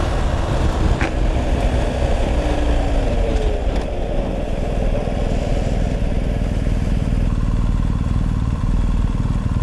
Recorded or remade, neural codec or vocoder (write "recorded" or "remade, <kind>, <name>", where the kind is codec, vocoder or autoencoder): recorded